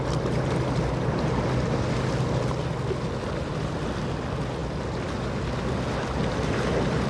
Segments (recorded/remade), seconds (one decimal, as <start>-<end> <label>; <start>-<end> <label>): 0.0-7.1 recorded